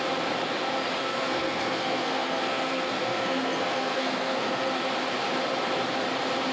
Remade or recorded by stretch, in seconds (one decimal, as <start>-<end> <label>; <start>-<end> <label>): 0.0-1.0 recorded; 1.0-4.7 remade; 4.7-6.5 recorded